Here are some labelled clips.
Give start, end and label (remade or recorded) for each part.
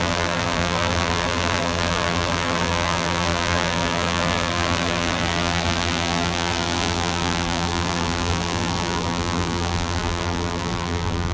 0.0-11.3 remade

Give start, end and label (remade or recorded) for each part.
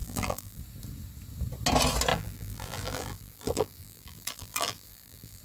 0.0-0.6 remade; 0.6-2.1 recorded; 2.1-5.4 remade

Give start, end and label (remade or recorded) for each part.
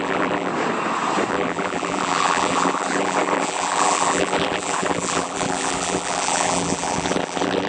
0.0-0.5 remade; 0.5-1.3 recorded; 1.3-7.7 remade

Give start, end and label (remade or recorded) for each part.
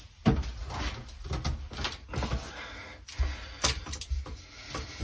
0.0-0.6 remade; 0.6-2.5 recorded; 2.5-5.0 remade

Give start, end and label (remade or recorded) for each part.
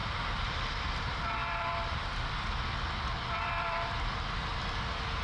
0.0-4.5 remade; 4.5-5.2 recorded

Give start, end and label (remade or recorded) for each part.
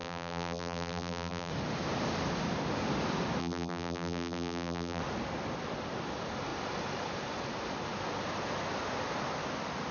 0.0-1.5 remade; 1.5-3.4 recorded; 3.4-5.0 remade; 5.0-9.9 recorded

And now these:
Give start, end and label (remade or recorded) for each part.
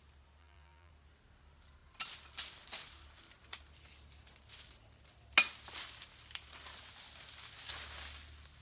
0.0-0.4 recorded; 0.4-0.9 remade; 0.9-8.6 recorded